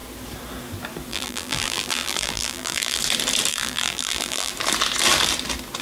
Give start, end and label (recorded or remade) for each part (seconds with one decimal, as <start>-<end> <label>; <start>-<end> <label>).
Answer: 0.0-1.1 recorded; 1.1-3.0 remade; 3.0-3.5 recorded; 3.5-4.5 remade; 4.5-5.8 recorded